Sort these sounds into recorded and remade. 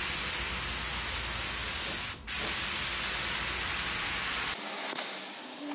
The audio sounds recorded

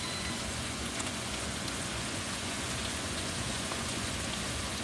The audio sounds remade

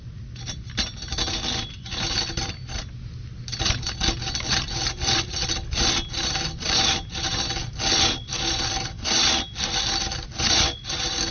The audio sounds recorded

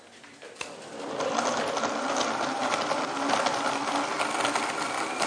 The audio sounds recorded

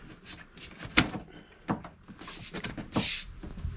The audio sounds recorded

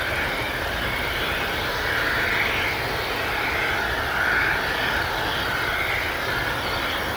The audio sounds recorded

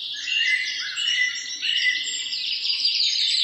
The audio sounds remade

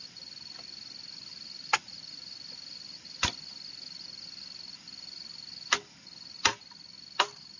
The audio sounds recorded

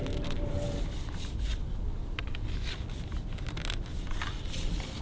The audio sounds recorded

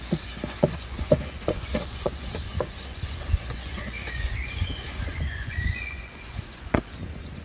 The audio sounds remade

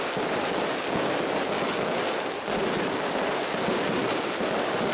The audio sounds recorded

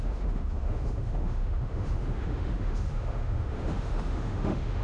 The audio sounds remade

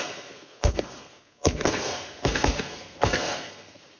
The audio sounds remade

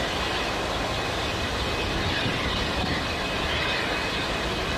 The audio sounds recorded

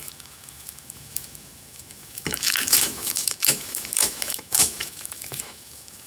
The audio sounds remade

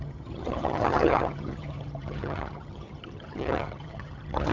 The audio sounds remade